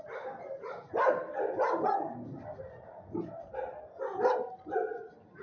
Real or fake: real